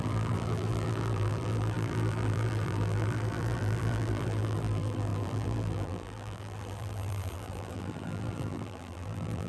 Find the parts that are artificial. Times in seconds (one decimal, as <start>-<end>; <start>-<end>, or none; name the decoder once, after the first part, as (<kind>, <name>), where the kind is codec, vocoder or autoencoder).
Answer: 0.0-9.5 (vocoder, BigVGAN v2)

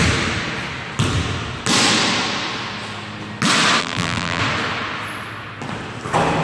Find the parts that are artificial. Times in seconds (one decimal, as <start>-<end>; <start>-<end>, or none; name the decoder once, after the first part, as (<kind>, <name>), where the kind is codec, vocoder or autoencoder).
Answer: 3.8-4.4 (vocoder, BigVGAN v2)

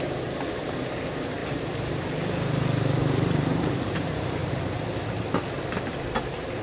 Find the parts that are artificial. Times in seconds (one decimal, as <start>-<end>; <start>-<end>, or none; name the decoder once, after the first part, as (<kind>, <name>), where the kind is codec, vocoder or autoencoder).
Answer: 0.0-4.4 (vocoder, BigVGAN v2)

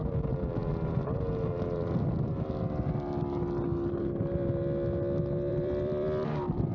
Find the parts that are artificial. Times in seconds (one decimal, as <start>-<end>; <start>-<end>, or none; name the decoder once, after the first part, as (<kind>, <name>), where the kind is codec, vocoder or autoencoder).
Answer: 5.5-6.7 (vocoder, BigVGAN v2)

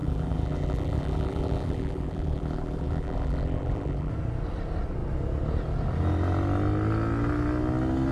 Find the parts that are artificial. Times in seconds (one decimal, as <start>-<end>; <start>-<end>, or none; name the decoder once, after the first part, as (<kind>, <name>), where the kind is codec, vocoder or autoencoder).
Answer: 0.0-4.1 (vocoder, BigVGAN v2)